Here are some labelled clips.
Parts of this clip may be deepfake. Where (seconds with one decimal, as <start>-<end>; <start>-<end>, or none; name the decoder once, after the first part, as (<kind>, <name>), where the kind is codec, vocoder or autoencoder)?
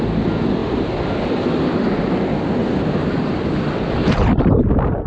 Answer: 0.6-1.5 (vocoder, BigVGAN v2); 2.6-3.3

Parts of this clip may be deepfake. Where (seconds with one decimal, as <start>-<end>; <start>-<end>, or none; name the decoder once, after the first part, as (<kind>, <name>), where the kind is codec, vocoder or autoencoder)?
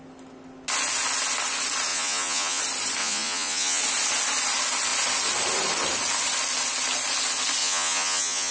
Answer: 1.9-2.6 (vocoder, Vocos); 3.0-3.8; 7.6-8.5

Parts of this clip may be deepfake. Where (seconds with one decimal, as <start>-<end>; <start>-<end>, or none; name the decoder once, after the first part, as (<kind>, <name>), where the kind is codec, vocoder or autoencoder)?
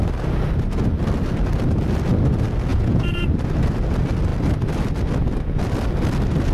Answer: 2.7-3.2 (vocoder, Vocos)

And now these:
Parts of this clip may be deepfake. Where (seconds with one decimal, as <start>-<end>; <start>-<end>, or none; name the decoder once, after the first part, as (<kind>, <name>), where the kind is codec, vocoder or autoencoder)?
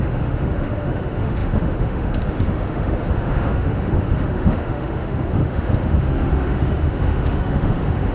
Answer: 0.0-8.1 (autoencoder, DAC-VAE)